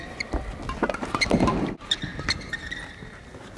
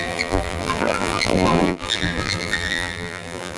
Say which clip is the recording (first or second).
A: first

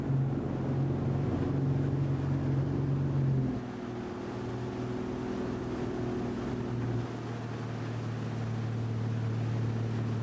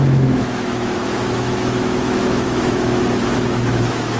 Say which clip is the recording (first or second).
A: first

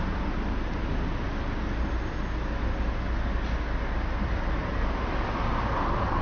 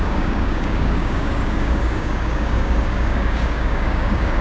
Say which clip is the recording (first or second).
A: first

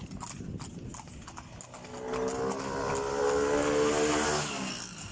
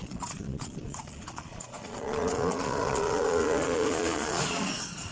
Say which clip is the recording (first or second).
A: first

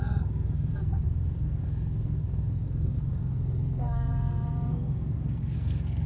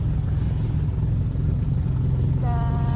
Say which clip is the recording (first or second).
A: second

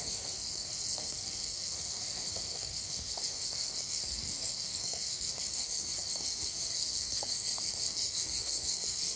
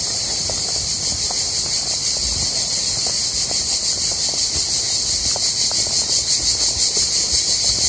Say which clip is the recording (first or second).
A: second